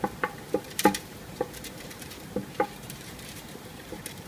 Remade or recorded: remade